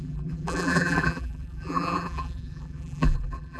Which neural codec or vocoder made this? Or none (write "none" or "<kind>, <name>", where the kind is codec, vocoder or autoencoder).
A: vocoder, BigVGAN v2